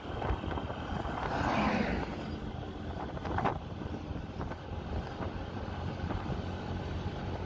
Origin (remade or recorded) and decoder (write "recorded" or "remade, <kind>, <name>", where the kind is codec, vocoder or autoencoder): recorded